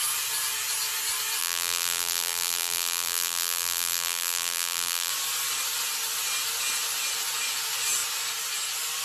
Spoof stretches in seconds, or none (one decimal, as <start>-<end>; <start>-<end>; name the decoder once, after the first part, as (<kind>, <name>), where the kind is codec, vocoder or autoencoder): 1.4-5.1 (vocoder, BigVGAN v2)